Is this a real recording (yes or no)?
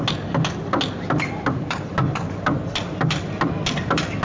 yes